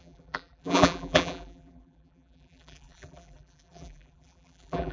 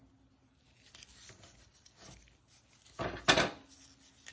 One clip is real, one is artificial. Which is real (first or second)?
second